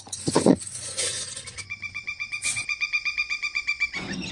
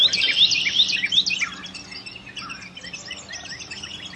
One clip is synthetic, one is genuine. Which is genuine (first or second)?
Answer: second